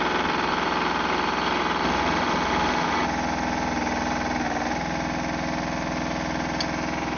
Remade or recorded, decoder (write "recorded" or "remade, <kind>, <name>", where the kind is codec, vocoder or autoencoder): recorded